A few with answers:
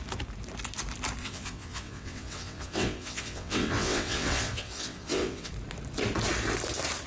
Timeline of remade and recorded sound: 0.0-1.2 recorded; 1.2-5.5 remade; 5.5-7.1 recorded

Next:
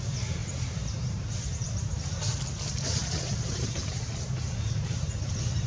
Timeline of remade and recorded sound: 0.0-0.4 recorded; 0.4-1.4 remade; 1.4-3.0 recorded; 3.0-4.1 remade; 4.1-5.7 recorded

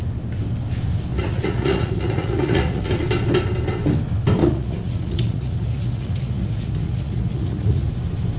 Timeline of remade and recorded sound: 0.0-1.1 recorded; 1.1-2.9 remade; 2.9-4.4 recorded; 4.4-7.9 remade; 7.9-8.4 recorded

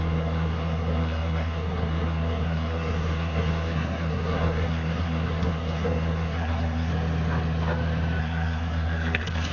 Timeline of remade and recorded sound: 0.0-6.9 remade; 6.9-8.2 recorded; 8.2-9.5 remade

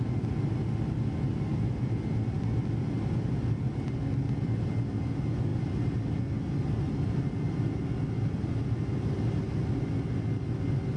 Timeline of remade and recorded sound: 0.0-11.0 recorded

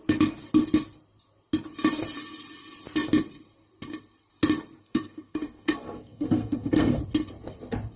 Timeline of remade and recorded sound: 0.0-4.8 recorded; 4.8-7.0 remade; 7.0-8.0 recorded

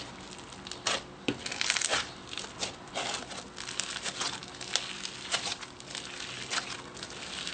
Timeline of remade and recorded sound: 0.0-7.5 recorded

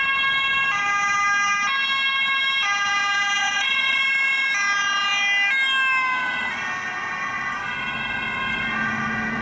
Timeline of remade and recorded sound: 0.0-3.4 recorded; 3.4-4.0 remade; 4.0-9.4 recorded